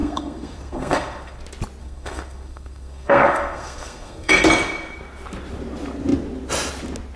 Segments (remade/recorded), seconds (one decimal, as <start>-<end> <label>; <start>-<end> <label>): 0.0-1.4 remade; 1.4-1.8 recorded; 1.8-4.3 remade; 4.3-7.2 recorded